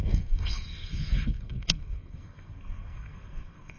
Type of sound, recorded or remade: remade